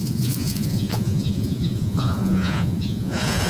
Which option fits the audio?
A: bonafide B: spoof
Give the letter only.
B